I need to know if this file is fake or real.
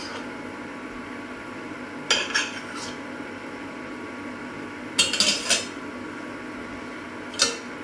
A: real